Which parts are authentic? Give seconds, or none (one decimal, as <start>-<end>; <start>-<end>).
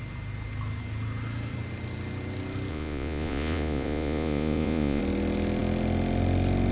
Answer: 0.0-2.7; 5.0-6.7